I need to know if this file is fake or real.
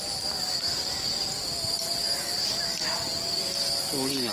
real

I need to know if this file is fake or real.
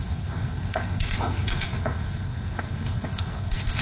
fake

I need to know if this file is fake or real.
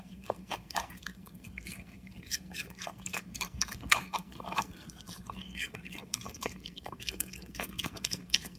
fake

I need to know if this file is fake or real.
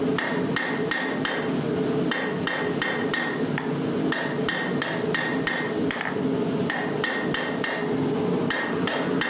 real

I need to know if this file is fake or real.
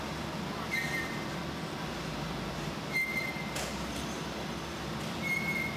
real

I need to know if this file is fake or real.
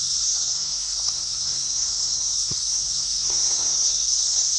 fake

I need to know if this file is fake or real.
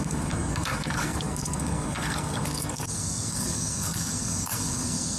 fake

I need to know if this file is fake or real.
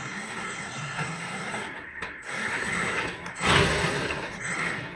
fake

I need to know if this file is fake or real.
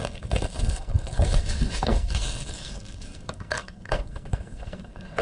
fake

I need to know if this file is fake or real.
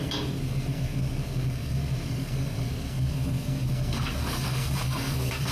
fake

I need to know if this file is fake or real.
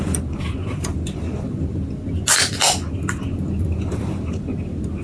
real